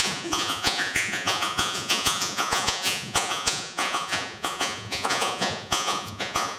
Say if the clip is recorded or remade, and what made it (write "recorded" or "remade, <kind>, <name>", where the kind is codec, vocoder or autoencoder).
remade, vocoder, Vocos